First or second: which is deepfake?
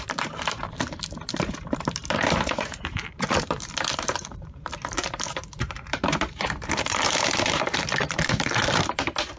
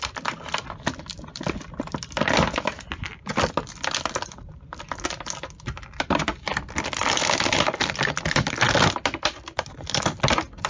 first